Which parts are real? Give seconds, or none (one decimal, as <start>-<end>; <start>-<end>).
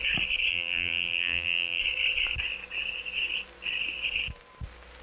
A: 0.0-0.5; 1.8-5.0